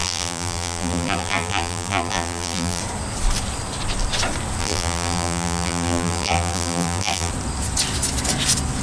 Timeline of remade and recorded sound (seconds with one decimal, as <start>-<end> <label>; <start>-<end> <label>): 0.0-2.8 remade; 2.8-4.6 recorded; 4.6-7.3 remade; 7.3-8.8 recorded